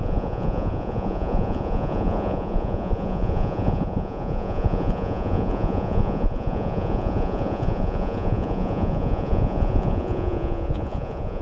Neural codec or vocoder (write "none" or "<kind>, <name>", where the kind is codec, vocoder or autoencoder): vocoder, Vocos